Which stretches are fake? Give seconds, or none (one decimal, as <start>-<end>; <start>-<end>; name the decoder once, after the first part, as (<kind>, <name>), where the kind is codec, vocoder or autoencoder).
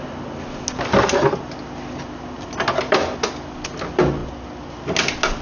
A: none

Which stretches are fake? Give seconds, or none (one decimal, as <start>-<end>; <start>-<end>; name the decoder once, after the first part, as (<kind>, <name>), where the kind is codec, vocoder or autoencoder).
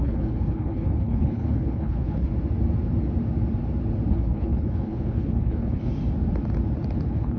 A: 0.0-2.3 (codec, HILCodec); 4.1-5.9; 7.0-7.4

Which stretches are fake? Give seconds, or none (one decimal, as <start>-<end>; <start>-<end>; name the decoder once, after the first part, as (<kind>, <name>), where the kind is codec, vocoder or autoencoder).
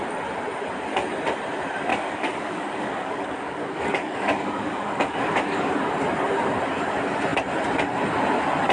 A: 1.9-5.7 (codec, DAC)